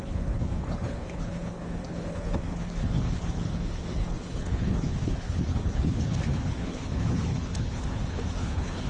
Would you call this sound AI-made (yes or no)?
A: yes